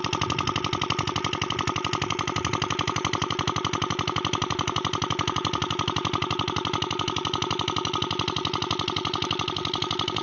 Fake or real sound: real